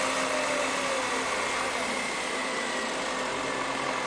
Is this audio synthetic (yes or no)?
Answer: no